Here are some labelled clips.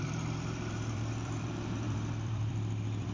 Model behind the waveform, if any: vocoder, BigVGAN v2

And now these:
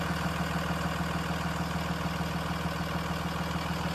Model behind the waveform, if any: none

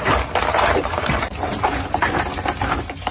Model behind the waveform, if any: vocoder, BigVGAN v2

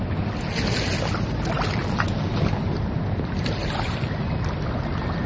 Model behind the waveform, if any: none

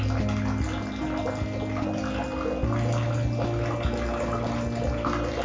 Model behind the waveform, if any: none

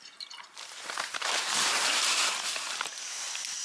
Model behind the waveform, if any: vocoder, BigVGAN v2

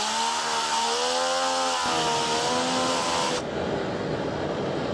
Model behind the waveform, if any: none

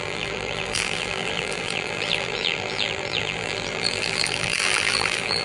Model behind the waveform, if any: vocoder, BigVGAN v2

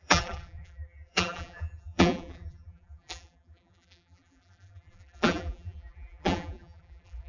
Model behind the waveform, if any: vocoder, BigVGAN v2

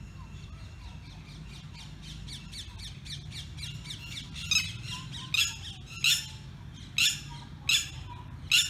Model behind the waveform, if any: none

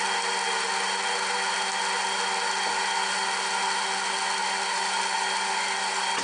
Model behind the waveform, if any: none